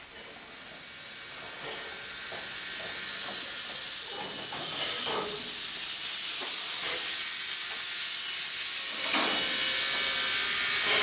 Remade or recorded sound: recorded